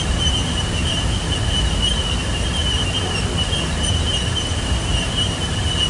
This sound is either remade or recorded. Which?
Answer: recorded